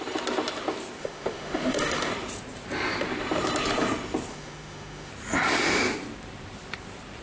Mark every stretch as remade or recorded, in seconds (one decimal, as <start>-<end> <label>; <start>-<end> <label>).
0.0-1.0 recorded; 1.0-2.1 remade; 2.1-4.3 recorded; 4.3-5.1 remade; 5.1-7.2 recorded